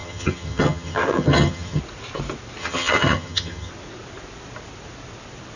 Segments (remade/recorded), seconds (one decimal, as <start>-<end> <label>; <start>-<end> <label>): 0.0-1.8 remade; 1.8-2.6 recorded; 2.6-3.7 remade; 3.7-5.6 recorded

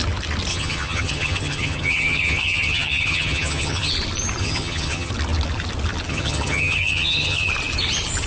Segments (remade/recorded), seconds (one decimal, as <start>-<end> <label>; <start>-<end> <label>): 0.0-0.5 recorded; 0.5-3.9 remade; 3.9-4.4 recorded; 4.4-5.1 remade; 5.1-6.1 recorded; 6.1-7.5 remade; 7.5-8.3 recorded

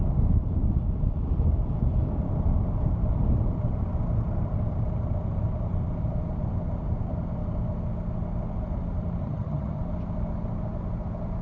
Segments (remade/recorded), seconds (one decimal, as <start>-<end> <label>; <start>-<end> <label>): 0.0-9.2 recorded; 9.2-9.8 remade; 9.8-11.4 recorded

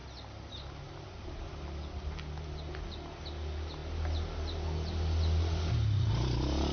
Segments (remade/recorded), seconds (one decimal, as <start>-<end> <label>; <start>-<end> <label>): 0.0-6.7 recorded